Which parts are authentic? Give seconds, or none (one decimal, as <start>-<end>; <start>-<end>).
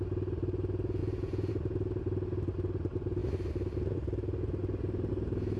0.0-1.0; 1.5-5.6